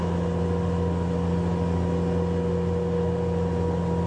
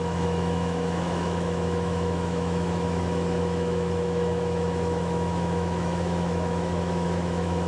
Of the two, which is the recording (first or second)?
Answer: first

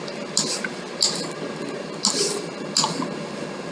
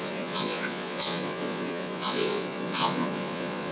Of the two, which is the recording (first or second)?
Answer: first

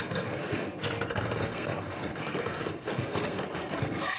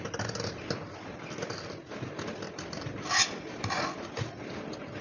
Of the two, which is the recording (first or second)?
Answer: second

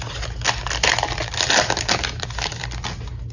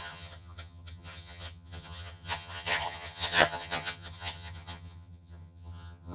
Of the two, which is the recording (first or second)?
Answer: first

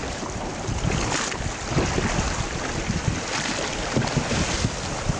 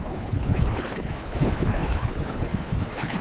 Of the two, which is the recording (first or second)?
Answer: first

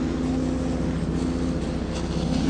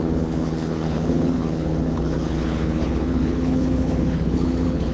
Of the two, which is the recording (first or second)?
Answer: first